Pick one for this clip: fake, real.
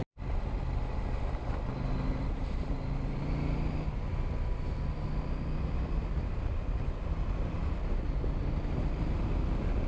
real